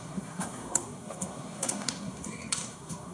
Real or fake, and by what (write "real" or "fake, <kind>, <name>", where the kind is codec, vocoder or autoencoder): fake, codec, SNAC